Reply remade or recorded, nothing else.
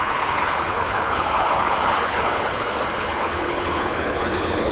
remade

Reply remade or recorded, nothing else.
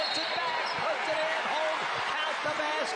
recorded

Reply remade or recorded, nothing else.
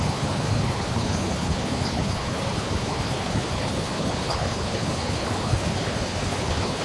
remade